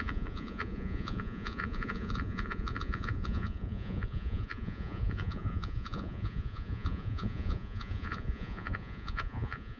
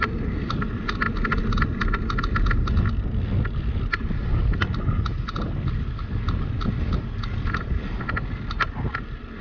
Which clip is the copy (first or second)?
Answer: first